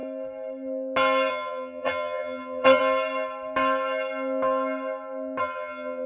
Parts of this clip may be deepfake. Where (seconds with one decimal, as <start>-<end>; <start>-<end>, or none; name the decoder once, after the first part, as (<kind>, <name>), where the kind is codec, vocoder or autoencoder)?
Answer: 1.3-2.8 (vocoder, HiFi-GAN); 5.4-6.1

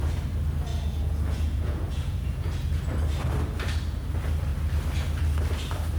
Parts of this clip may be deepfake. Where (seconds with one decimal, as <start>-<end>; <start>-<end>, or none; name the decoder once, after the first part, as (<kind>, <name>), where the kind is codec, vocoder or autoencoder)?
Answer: 0.7-2.8 (vocoder, Vocos)

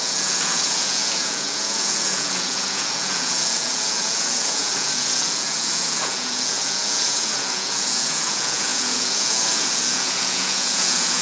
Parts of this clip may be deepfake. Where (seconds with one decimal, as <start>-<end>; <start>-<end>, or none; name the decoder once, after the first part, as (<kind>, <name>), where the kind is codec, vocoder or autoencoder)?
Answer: 0.0-11.2 (vocoder, Vocos)

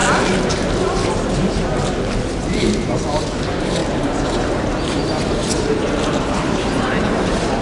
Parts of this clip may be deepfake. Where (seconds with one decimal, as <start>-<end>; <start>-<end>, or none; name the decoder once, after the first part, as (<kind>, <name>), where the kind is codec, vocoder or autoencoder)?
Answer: 0.8-7.6 (vocoder, BigVGAN v2)

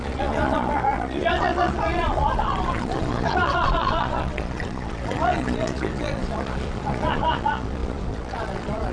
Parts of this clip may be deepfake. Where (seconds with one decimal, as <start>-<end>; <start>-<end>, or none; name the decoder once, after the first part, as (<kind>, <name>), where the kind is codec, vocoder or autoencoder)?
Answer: 0.0-8.9 (vocoder, Vocos)

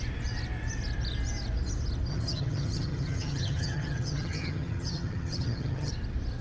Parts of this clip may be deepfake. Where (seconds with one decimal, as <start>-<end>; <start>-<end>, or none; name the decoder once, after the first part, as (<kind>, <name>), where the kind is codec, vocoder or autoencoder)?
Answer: 2.1-5.9 (vocoder, HiFi-GAN)

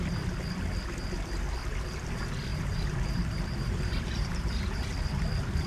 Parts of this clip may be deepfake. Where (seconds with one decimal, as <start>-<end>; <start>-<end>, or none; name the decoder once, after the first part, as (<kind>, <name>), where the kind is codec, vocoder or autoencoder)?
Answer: 2.5-4.6 (vocoder, BigVGAN v2)

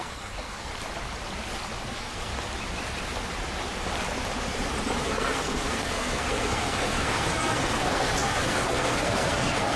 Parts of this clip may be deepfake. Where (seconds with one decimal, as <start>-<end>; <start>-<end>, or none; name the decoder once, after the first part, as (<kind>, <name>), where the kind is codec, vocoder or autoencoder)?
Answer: 0.0-0.7 (codec, SNAC); 1.9-2.3; 5.0-9.8